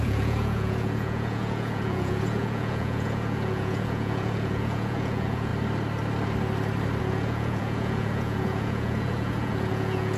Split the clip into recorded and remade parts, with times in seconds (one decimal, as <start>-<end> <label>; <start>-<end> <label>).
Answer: 0.0-5.5 remade; 5.5-7.0 recorded; 7.0-10.2 remade